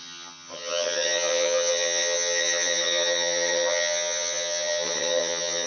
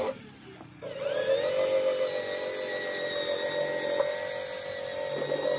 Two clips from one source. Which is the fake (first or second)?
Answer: first